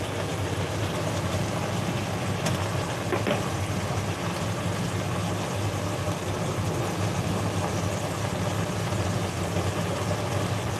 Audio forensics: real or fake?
real